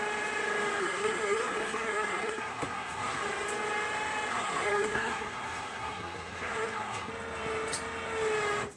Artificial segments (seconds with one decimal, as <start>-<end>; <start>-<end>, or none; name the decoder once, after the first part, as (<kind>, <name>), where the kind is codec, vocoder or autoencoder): 0.8-3.2 (codec, SNAC); 4.3-7.1